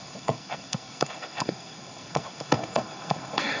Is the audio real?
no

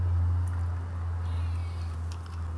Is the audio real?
yes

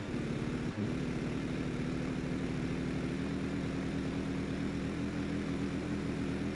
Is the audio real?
yes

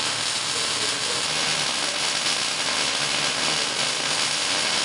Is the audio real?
yes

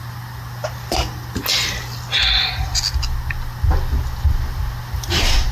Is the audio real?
yes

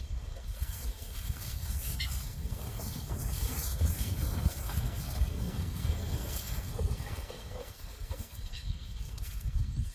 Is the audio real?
no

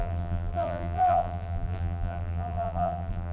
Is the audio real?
no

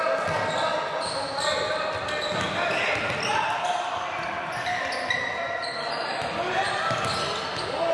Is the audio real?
yes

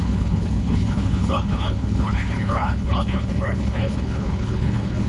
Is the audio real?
no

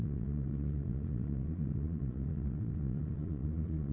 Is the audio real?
no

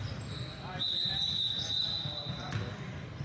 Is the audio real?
yes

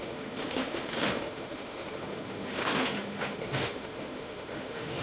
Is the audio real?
no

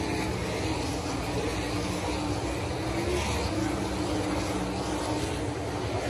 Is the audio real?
yes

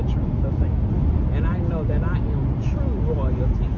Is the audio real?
yes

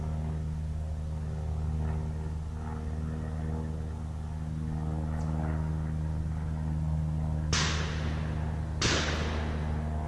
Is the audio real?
yes